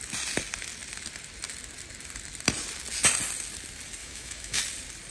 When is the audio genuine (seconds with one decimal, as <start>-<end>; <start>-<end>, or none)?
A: 0.0-4.0; 4.6-5.1